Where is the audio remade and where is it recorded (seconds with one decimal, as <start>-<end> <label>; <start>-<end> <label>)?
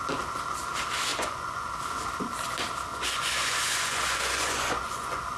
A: 0.0-1.1 recorded; 1.1-1.7 remade; 1.7-2.9 recorded; 2.9-5.4 remade